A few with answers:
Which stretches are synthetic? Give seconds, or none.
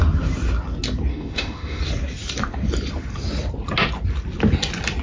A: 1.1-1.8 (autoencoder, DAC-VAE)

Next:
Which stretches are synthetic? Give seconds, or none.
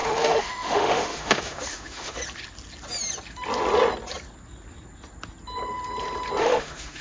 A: 0.0-2.2 (autoencoder, DAC-VAE); 6.4-7.0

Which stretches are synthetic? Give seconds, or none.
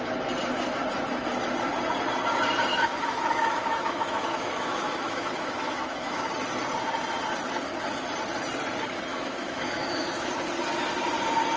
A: 2.7-6.3 (autoencoder, DAC-VAE); 9.1-10.3